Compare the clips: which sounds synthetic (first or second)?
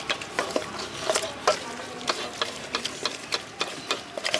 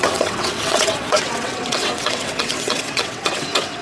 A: second